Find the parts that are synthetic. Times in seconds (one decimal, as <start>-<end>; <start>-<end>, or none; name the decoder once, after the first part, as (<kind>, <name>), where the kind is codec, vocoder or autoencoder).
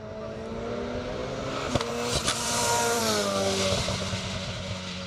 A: 2.3-3.0 (vocoder, BigVGAN v2)